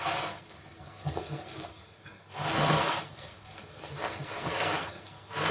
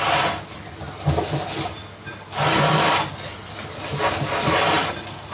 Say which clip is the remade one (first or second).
first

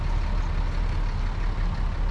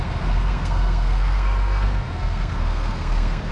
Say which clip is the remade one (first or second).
second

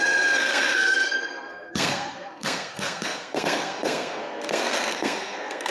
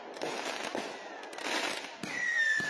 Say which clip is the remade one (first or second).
first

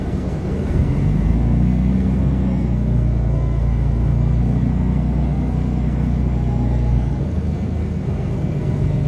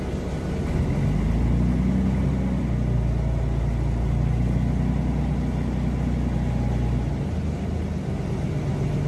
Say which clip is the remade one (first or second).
first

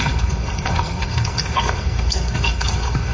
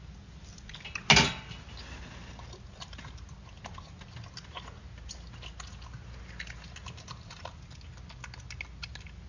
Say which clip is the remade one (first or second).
first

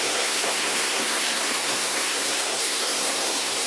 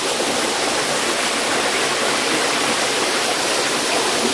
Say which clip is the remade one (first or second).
first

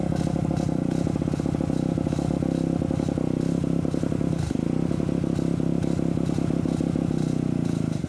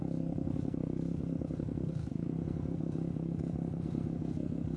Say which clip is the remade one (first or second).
second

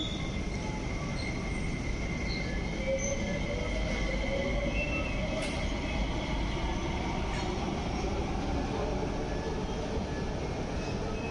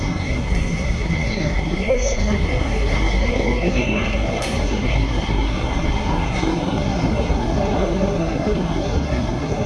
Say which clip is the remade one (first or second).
second